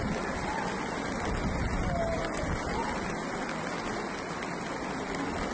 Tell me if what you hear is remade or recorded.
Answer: recorded